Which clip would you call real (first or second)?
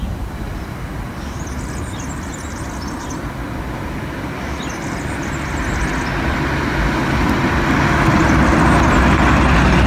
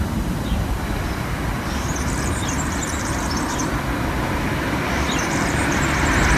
first